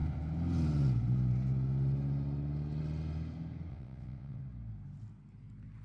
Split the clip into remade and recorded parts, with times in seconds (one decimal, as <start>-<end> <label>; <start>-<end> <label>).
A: 0.0-3.7 recorded; 3.7-4.4 remade; 4.4-5.8 recorded